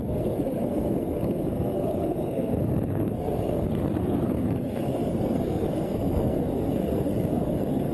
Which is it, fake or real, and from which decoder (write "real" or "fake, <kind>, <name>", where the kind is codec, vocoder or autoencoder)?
fake, codec, SNAC